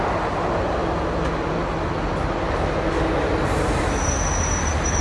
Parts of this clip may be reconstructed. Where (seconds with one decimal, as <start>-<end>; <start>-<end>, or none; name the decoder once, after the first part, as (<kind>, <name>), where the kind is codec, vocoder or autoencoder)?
none